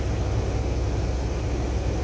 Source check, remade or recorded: recorded